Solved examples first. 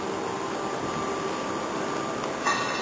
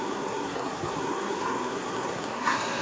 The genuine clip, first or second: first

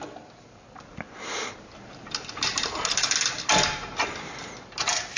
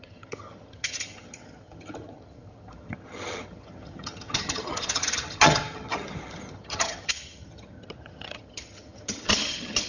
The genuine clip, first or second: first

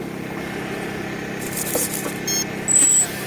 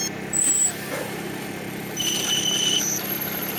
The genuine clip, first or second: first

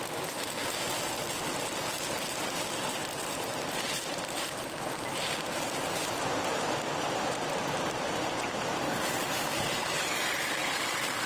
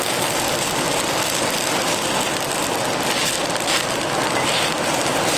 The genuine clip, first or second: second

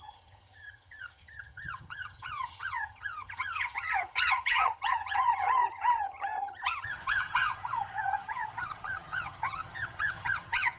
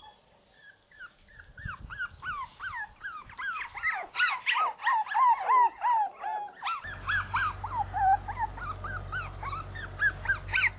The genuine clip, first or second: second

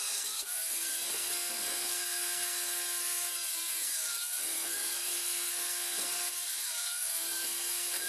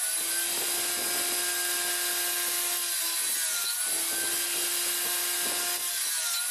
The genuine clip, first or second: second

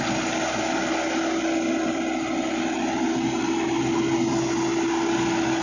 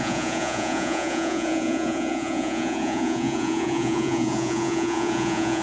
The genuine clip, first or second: first